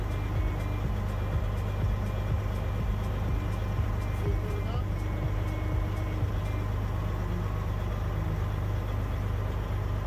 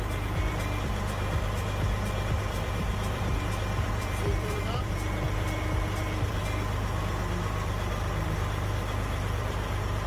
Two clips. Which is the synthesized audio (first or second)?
second